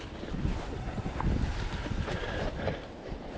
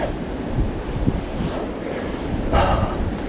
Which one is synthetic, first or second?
second